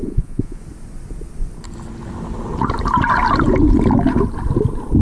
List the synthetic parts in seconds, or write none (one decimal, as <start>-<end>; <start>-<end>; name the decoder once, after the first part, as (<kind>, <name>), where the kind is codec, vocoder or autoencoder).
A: 0.0-0.6 (vocoder, Vocos)